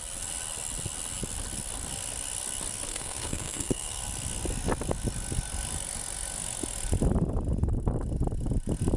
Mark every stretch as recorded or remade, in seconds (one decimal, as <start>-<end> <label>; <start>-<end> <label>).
0.0-2.9 recorded; 2.9-4.0 remade; 4.0-9.0 recorded